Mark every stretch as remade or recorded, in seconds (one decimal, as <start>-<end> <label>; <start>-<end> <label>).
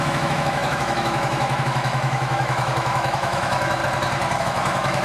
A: 0.0-3.8 remade; 3.8-4.4 recorded; 4.4-5.0 remade